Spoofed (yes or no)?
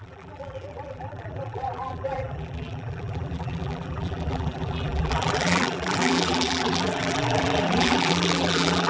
yes